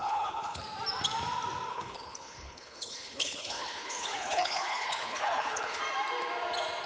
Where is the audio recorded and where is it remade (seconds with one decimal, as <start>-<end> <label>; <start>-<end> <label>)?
0.0-0.6 remade; 0.6-1.7 recorded; 1.7-5.8 remade; 5.8-6.9 recorded